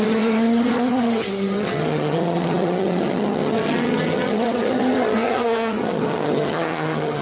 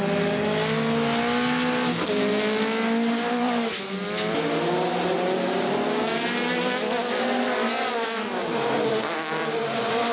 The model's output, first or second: first